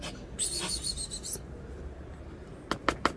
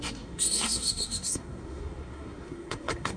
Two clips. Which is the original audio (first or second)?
first